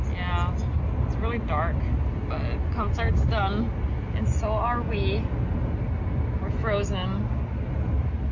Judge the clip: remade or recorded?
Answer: recorded